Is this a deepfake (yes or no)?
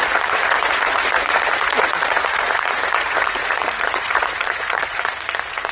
yes